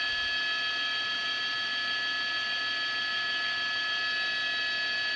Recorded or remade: recorded